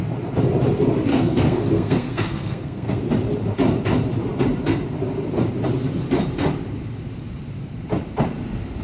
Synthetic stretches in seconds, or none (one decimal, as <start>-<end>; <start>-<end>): 1.1-3.0